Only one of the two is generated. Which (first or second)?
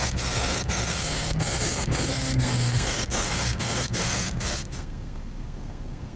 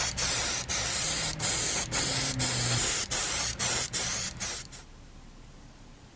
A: first